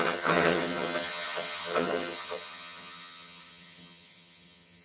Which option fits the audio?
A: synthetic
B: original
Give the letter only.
A